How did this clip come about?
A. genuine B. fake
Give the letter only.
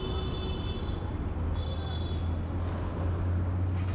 A